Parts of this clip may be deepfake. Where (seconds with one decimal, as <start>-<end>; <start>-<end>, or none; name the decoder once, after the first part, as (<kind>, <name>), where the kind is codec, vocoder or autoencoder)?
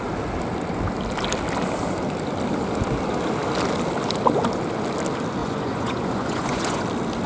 5.4-6.8 (vocoder, Vocos)